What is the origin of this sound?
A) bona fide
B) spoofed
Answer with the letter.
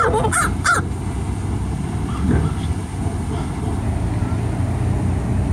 A